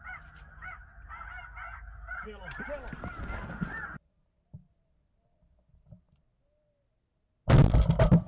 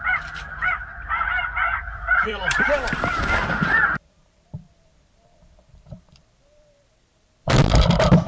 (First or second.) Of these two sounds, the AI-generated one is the second